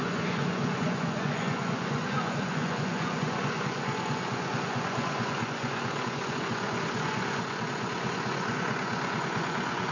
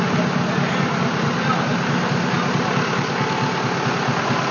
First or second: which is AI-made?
first